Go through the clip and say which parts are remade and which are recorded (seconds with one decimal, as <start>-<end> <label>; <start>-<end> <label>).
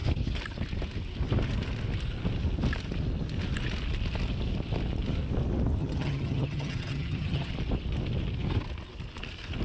0.0-5.8 recorded; 5.8-7.5 remade; 7.5-9.6 recorded